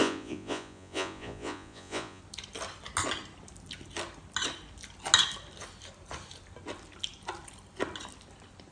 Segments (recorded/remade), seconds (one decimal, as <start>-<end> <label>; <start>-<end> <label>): 0.0-2.2 remade; 2.2-8.7 recorded